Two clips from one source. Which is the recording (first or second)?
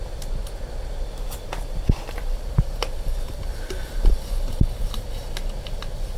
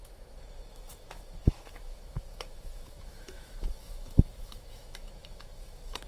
first